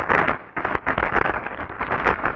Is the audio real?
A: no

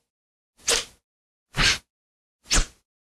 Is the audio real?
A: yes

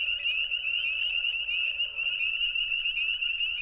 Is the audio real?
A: yes